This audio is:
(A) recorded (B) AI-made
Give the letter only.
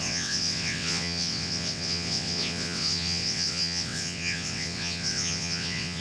B